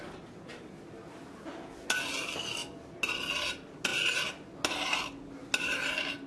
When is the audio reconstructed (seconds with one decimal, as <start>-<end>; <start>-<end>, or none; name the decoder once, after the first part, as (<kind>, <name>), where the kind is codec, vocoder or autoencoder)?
none